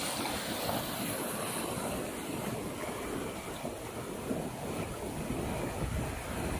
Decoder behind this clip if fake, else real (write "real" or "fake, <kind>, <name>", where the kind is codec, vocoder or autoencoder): real